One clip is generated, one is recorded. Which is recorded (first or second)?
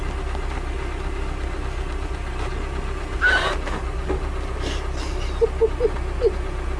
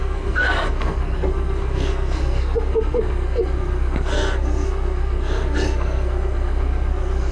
first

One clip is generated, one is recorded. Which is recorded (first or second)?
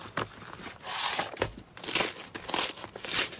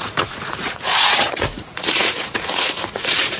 first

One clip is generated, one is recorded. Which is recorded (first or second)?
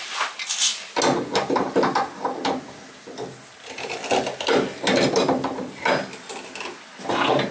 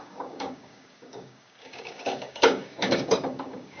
first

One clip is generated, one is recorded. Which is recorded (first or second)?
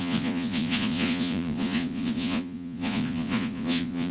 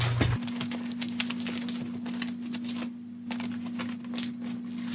second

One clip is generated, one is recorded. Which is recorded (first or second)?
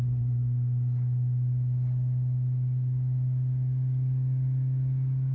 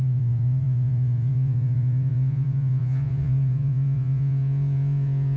first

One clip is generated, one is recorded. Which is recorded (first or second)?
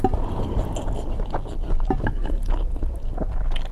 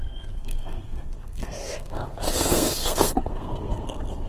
first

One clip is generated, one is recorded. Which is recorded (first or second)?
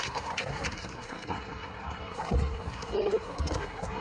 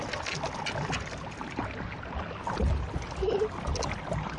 second